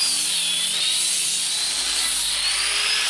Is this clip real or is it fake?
fake